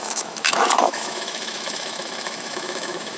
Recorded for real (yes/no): no